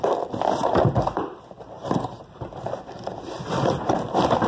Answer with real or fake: real